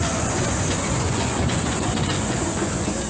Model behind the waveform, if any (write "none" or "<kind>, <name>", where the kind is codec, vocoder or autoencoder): vocoder, Vocos